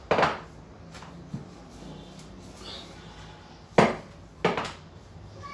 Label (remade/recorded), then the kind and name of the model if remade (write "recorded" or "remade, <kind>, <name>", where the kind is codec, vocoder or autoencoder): recorded